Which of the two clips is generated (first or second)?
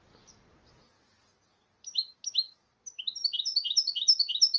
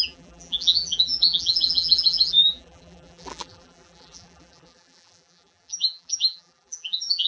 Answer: second